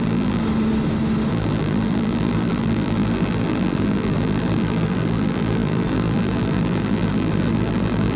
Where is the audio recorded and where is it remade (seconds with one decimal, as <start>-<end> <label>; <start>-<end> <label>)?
0.0-0.4 remade; 0.4-1.3 recorded; 1.3-8.2 remade